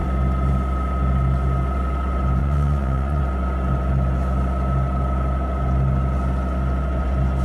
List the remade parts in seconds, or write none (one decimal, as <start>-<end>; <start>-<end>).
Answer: 2.4-3.2